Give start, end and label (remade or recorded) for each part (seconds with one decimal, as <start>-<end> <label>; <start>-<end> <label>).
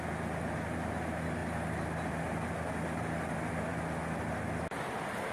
0.0-5.3 recorded